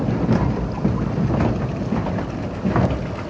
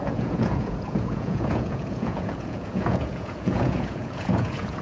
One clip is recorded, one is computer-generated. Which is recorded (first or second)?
first